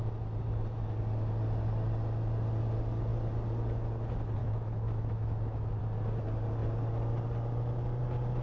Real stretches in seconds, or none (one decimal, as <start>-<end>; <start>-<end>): 0.0-4.4; 5.8-8.4